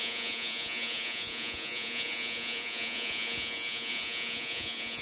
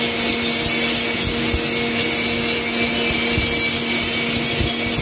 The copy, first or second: first